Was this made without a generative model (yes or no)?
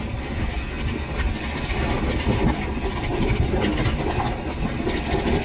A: yes